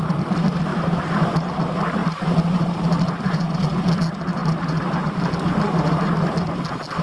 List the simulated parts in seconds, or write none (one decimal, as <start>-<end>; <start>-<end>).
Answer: 0.7-1.6; 2.0-3.6; 4.4-5.2